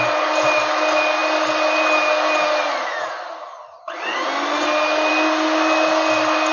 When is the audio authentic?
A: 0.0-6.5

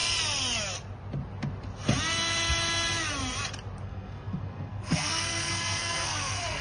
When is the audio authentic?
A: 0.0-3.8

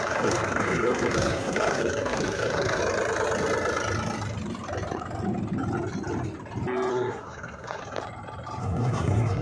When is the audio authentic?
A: 2.8-6.9; 7.8-8.6

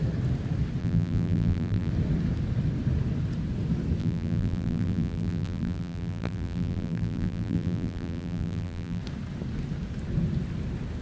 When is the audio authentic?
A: 0.0-0.8; 1.9-4.0; 9.0-11.0

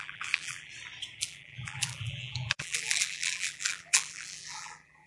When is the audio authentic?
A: 0.7-1.2

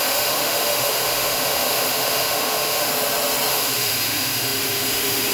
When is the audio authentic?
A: 2.9-3.5

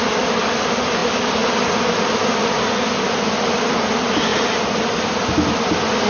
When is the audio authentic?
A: 0.0-6.1

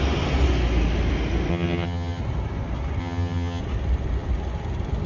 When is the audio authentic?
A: 0.0-1.5; 2.2-3.0; 3.6-5.1